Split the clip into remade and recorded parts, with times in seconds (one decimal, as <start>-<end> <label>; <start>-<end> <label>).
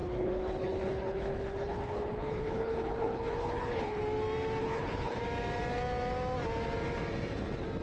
0.0-4.0 remade; 4.0-4.6 recorded; 4.6-5.2 remade; 5.2-7.8 recorded